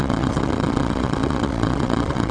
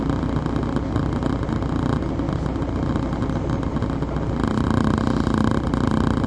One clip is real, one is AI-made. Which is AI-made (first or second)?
first